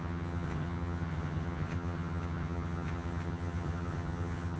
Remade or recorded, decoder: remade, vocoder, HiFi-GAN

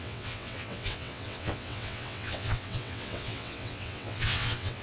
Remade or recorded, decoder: remade, vocoder, WaveNeXt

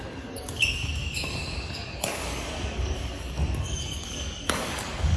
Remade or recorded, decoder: remade, codec, DAC